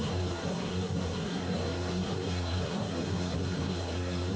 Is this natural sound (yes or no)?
no